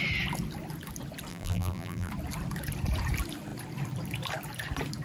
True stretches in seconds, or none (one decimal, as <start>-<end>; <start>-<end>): 0.0-1.3; 2.1-5.0